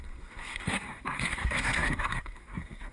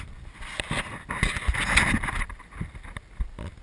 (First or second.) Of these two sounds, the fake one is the first